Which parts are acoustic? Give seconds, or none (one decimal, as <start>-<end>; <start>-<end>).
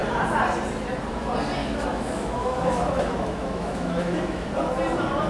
0.0-1.6; 4.5-5.3